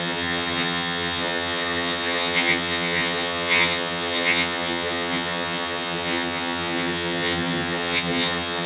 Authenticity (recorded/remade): remade